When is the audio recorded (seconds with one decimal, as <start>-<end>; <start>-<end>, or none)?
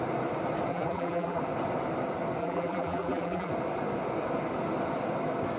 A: 0.0-0.7; 1.4-2.4; 3.5-5.6